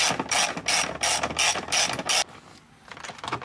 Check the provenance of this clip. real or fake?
real